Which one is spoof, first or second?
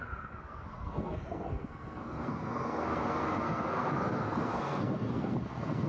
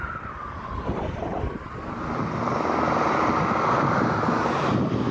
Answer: first